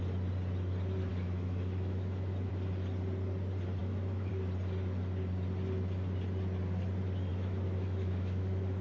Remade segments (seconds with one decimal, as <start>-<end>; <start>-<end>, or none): 1.1-2.5; 3.8-4.3; 7.3-8.8

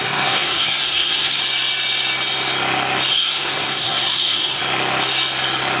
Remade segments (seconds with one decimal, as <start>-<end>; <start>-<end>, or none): 0.0-1.4; 3.1-4.6

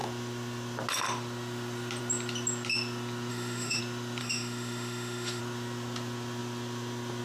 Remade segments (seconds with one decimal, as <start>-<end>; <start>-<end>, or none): 3.3-3.8; 4.2-5.4

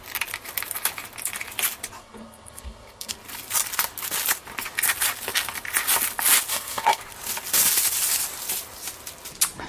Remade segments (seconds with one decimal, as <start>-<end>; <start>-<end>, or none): 2.0-3.1; 6.5-7.0

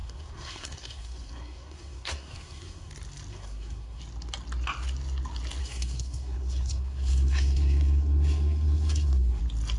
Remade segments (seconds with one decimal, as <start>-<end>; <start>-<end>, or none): 0.0-2.9; 3.3-4.0; 5.6-9.4